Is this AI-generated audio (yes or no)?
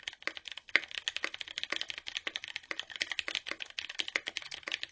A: no